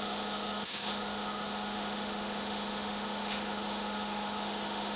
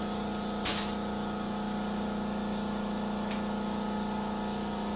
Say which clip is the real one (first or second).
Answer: second